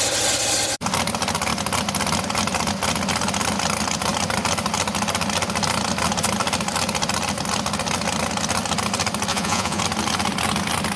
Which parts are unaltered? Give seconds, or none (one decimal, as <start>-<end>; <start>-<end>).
0.0-9.3; 9.8-11.0